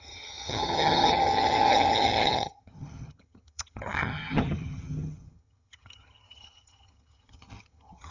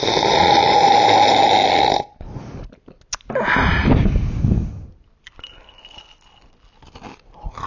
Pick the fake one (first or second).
first